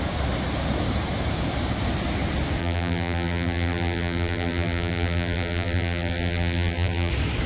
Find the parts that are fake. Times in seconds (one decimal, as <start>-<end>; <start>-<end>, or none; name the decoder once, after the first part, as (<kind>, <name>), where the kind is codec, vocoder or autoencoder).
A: 2.6-7.1 (vocoder, BigVGAN v2)